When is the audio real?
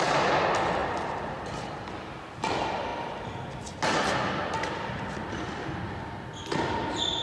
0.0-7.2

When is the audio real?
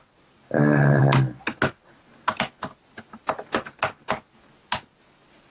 0.0-5.5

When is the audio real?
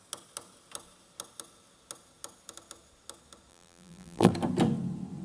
0.0-3.5; 4.3-5.2